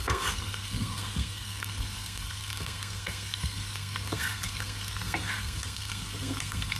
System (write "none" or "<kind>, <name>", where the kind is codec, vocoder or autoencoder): codec, SNAC